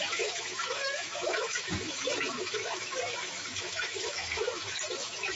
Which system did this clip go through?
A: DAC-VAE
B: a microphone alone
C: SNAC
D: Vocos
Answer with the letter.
A